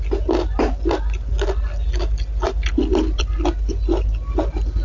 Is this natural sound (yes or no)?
yes